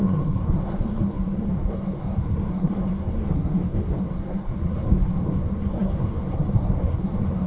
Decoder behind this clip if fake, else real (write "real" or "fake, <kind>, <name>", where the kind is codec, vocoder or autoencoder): fake, codec, SNAC